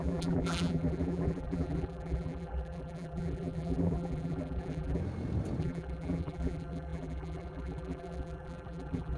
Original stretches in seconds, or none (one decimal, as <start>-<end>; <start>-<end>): 5.0-5.6